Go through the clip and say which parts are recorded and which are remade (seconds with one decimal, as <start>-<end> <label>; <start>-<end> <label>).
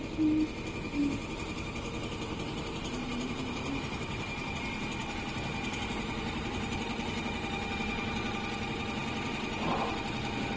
0.0-1.2 recorded; 1.2-4.6 remade; 4.6-5.0 recorded; 5.0-7.2 remade; 7.2-10.6 recorded